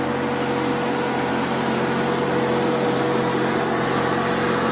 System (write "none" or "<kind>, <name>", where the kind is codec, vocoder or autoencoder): none